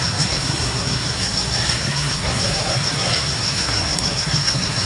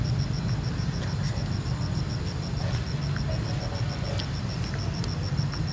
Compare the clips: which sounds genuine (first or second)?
second